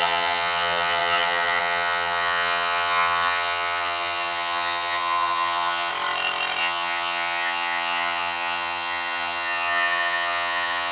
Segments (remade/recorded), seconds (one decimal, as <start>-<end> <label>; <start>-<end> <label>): 0.0-5.9 remade; 5.9-6.6 recorded; 6.6-10.9 remade